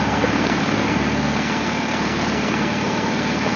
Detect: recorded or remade remade